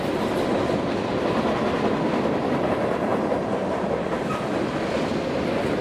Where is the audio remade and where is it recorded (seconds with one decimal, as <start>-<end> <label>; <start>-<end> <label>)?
0.0-3.1 recorded; 3.1-3.7 remade; 3.7-5.8 recorded